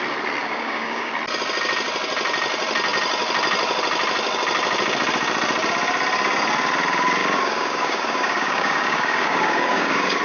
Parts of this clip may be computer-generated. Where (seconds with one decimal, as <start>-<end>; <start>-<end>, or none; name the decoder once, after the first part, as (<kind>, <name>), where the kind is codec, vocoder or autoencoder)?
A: 0.4-1.1 (codec, DAC); 7.2-10.2